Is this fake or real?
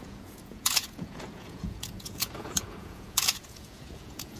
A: fake